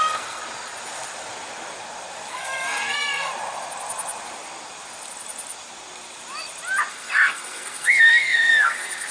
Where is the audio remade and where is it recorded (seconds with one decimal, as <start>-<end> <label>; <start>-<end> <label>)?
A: 0.0-0.4 remade; 0.4-2.3 recorded; 2.3-3.3 remade; 3.3-6.9 recorded; 6.9-9.1 remade